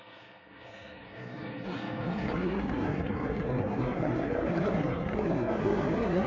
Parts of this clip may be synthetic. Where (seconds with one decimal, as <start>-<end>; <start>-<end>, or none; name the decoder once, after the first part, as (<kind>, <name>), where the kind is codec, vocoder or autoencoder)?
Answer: 0.0-6.3 (codec, SNAC)